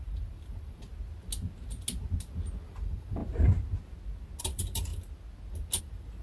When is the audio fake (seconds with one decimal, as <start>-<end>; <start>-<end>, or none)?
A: 0.0-0.9; 2.7-3.2; 4.4-4.9; 5.8-6.2